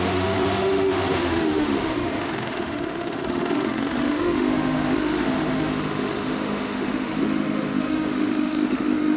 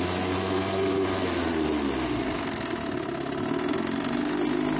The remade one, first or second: first